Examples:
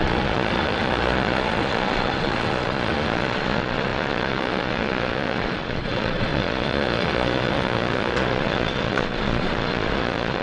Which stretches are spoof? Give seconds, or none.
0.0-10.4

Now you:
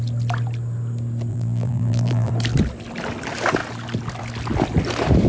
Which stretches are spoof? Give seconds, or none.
1.3-2.3

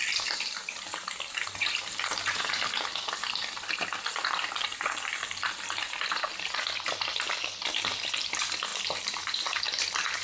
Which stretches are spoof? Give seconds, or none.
8.7-9.6

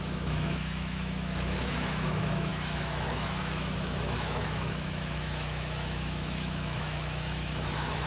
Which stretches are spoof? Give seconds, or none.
0.0-8.1

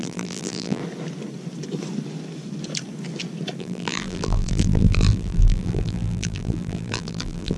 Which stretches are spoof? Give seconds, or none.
0.0-0.8; 3.6-7.6

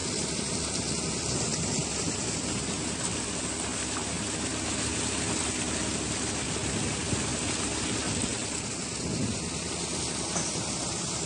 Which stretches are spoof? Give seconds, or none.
none

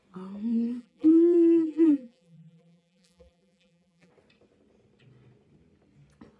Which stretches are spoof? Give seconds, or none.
0.8-4.1

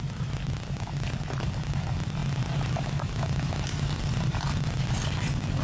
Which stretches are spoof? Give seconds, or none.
0.0-2.2; 4.0-5.6